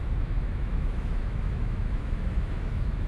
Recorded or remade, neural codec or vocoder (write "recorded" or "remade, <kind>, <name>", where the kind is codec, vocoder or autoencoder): remade, autoencoder, DAC-VAE